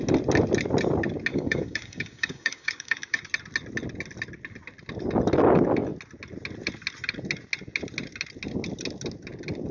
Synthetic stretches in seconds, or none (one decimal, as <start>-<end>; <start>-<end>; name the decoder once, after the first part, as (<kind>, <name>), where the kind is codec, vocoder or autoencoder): 1.3-3.3 (codec, DAC)